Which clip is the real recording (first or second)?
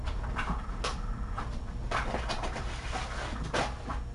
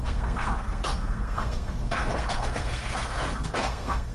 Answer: first